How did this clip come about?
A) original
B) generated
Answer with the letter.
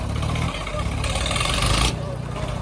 A